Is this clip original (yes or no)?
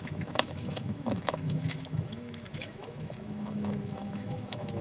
no